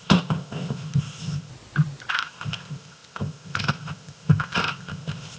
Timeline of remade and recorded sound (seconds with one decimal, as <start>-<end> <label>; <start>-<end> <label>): 0.0-1.5 remade; 1.5-2.1 recorded; 2.1-5.4 remade